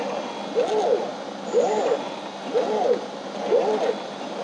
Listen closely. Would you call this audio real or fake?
real